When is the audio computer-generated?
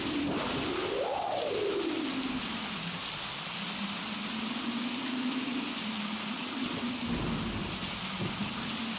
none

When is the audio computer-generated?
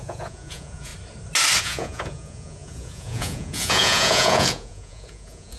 0.0-0.9 (vocoder, Vocos); 1.6-5.6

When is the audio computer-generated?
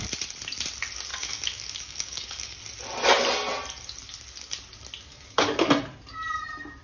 1.1-2.6 (codec, DAC); 5.1-5.7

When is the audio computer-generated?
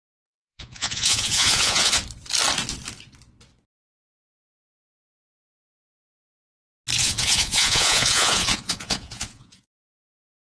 0.0-2.0 (vocoder, Vocos); 7.0-10.6